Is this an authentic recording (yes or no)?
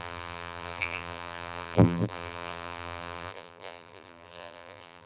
no